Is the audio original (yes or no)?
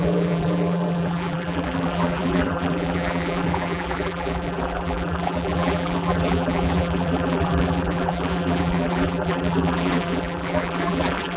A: no